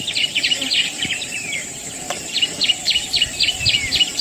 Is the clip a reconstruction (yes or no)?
yes